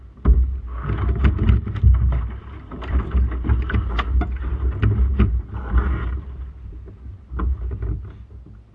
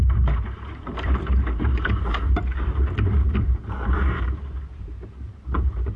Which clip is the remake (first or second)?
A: second